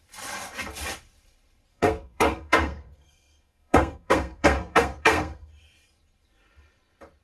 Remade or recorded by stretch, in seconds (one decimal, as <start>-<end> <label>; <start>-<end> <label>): 0.0-1.7 recorded; 1.7-5.5 remade; 5.5-7.2 recorded